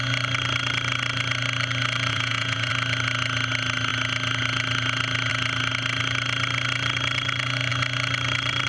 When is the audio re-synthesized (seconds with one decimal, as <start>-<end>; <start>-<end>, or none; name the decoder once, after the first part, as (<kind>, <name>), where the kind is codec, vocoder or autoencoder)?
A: 2.1-2.7 (vocoder, Vocos)